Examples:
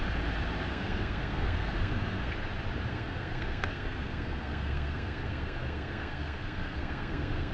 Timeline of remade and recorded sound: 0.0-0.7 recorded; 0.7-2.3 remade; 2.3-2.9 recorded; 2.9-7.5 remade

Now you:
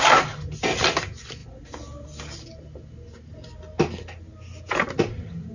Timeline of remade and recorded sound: 0.0-5.5 recorded